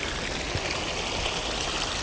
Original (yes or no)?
yes